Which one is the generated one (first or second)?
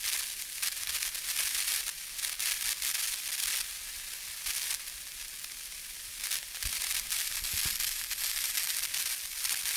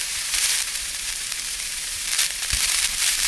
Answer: second